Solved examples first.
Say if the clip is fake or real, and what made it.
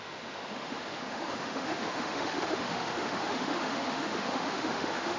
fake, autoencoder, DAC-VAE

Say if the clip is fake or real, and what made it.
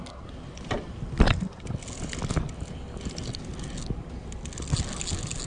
real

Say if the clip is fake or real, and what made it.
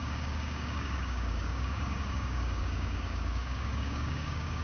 fake, codec, DAC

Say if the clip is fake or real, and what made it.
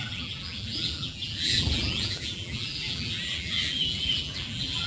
fake, vocoder, BigVGAN v2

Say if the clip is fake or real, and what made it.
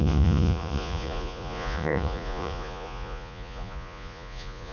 fake, vocoder, Vocos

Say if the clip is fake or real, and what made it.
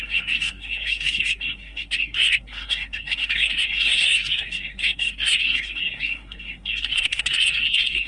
fake, codec, SNAC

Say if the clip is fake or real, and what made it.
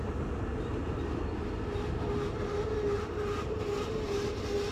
real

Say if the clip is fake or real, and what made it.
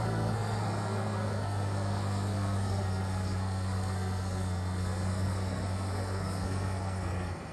fake, codec, SNAC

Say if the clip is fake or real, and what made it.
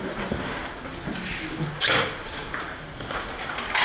real